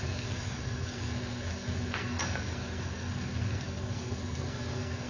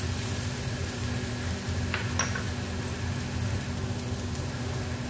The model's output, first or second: first